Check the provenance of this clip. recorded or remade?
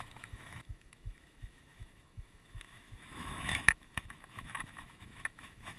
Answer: remade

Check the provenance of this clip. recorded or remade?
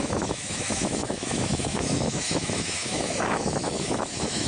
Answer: remade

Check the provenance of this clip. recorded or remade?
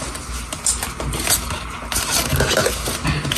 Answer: recorded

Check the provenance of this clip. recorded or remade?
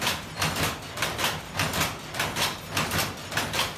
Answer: recorded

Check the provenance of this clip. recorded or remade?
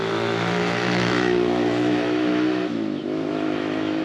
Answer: remade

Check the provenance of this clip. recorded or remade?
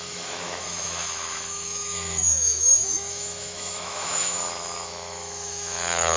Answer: remade